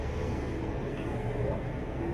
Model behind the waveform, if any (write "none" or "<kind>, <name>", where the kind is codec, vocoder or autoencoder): codec, SNAC